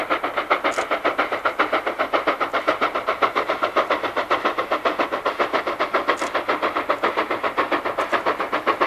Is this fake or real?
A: real